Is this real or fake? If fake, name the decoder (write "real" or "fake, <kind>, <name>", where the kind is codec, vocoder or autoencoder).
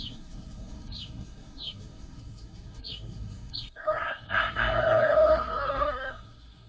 fake, codec, SNAC